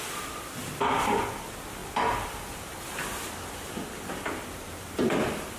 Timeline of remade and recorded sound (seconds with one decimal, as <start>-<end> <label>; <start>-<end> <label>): 0.0-1.8 recorded; 1.8-5.6 remade